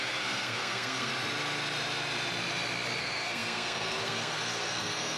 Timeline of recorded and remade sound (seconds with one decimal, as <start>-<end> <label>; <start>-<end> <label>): 0.0-1.1 remade; 1.1-3.0 recorded; 3.0-5.2 remade